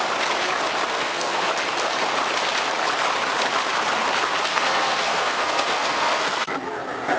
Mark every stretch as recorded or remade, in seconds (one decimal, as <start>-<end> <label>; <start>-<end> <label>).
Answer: 0.0-0.9 recorded; 0.9-1.5 remade; 1.5-4.5 recorded; 4.5-6.6 remade; 6.6-7.2 recorded